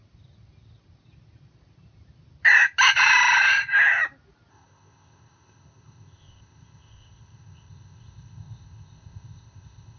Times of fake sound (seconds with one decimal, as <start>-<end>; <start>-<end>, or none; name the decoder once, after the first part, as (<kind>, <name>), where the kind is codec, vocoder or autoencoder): 4.5-10.0 (codec, ZipCodec)